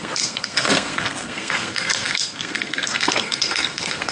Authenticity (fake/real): fake